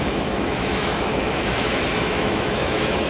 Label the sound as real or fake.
fake